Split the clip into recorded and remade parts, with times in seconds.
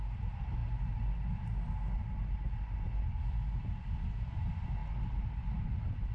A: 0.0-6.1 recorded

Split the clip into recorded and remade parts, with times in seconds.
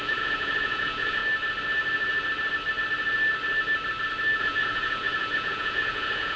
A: 0.0-1.2 remade; 1.2-4.4 recorded; 4.4-6.4 remade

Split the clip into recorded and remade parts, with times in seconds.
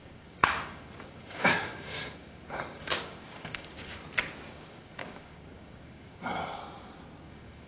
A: 0.0-4.0 remade; 4.0-4.5 recorded; 4.5-6.6 remade; 6.6-7.2 recorded; 7.2-7.7 remade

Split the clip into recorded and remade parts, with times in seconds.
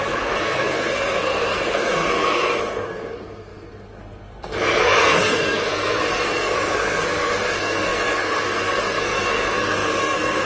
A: 0.0-10.5 remade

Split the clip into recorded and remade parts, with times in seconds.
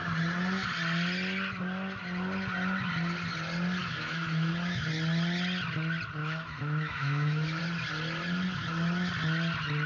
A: 0.0-3.8 recorded; 3.8-4.5 remade; 4.5-6.2 recorded; 6.2-7.6 remade; 7.6-9.9 recorded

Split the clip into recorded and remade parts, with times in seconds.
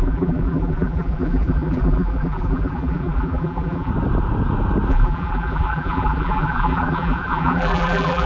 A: 0.0-3.9 remade; 3.9-4.9 recorded; 4.9-8.3 remade